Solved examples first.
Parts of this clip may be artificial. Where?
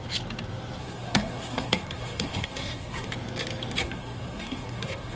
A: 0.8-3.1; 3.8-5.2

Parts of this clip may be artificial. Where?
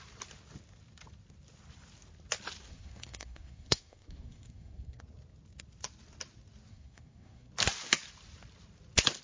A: 2.7-5.0; 6.7-7.5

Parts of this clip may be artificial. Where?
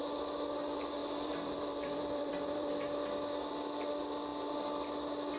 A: 1.0-2.7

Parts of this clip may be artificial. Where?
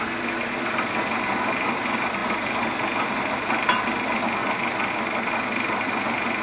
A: none